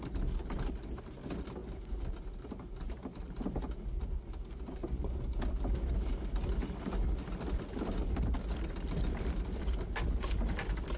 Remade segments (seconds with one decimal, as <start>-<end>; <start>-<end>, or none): none